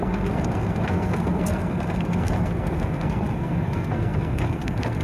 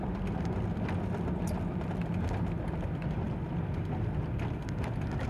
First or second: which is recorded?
second